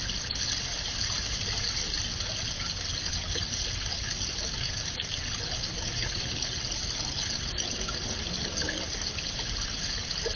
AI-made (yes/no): no